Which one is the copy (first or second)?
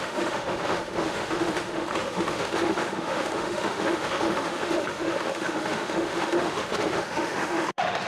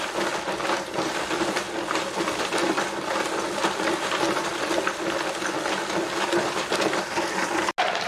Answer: first